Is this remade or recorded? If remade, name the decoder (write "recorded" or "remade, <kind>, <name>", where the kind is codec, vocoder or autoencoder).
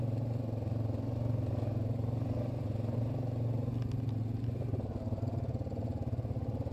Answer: recorded